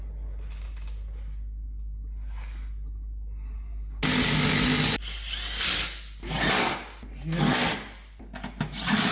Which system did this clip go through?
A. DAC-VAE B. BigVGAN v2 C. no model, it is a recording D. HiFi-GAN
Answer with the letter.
C